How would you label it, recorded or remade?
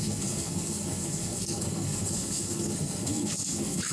remade